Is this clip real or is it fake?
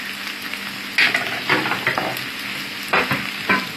real